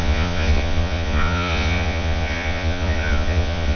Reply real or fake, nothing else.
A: fake